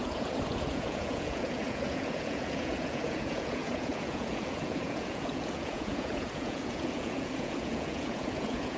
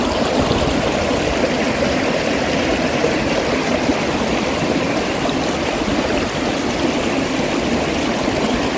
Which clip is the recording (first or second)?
second